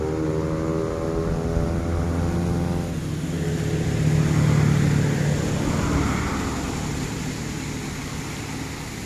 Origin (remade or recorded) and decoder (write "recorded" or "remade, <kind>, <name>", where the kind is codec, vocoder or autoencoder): recorded